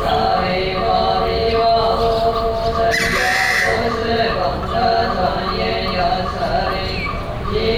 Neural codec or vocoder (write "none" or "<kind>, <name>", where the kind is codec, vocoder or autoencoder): none